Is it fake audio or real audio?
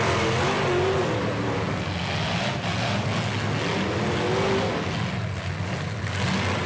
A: real